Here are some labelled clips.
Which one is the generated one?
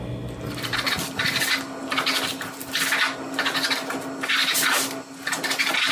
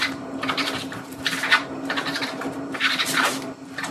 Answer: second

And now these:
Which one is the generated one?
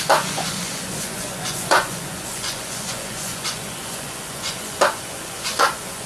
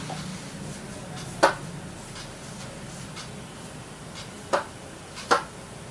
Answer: first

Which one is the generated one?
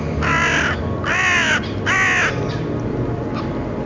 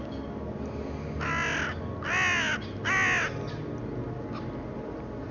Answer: first